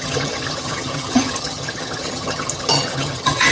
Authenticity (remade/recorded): remade